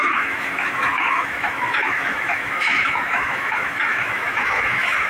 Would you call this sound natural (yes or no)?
no